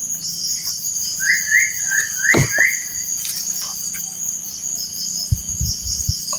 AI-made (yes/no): no